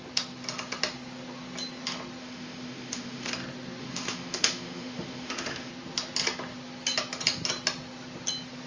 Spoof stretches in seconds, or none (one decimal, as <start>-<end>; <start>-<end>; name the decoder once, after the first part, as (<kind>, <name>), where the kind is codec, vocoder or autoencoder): 2.2-3.3 (autoencoder, DAC-VAE); 3.8-5.7